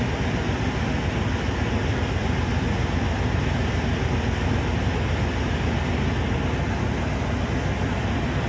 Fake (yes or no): no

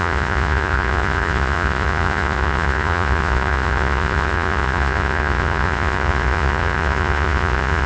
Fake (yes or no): yes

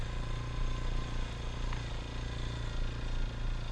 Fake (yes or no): no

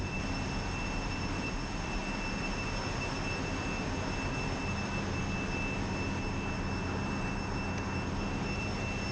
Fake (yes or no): no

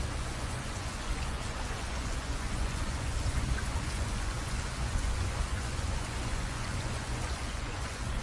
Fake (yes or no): yes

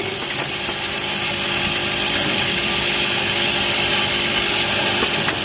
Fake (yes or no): no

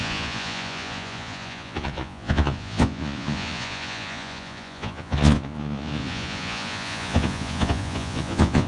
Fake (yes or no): yes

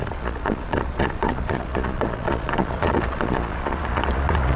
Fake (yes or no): yes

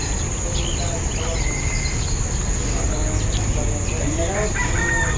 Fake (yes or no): no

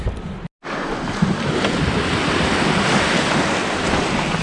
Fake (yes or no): no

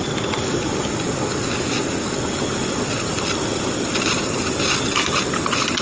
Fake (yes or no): no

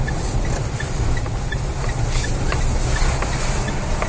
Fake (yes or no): no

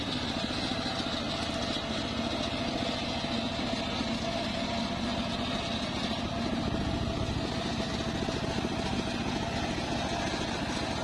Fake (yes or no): no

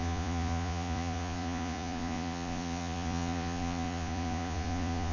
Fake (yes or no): yes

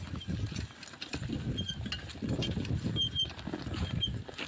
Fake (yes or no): no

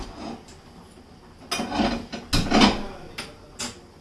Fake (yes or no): no